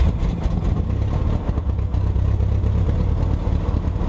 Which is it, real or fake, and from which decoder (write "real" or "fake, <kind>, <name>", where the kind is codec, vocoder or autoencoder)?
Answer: real